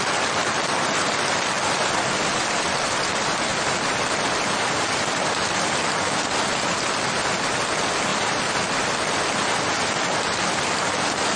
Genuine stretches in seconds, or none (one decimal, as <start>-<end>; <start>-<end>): 0.0-11.4

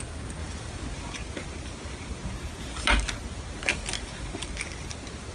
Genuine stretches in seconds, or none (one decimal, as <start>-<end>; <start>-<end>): 0.0-5.3

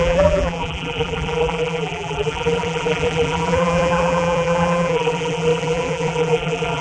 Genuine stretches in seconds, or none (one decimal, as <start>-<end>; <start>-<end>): none

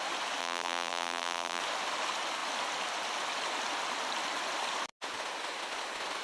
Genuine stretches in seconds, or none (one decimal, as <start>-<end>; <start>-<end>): 0.0-0.4; 1.6-6.2

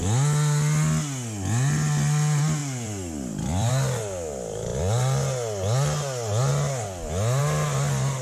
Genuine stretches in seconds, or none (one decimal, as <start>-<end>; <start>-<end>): 0.0-2.6; 3.7-8.2